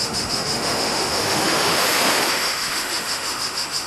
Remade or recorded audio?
remade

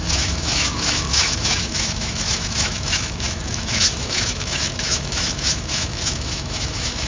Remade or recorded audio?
remade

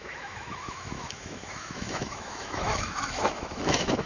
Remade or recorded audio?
remade